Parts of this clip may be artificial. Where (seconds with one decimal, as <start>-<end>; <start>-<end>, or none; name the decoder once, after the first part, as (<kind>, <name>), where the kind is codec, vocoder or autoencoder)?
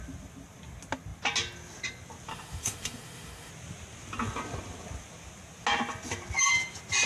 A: 2.3-3.5 (autoencoder, DAC-VAE)